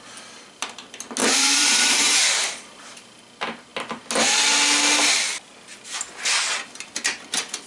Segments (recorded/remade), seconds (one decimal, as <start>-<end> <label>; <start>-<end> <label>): 0.0-1.2 recorded; 1.2-3.2 remade; 3.2-7.7 recorded